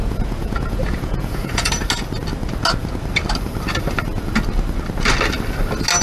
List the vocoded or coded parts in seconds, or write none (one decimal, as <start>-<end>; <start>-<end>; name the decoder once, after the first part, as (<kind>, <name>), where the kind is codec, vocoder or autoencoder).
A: 0.0-1.7 (vocoder, Vocos)